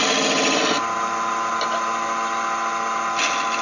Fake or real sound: real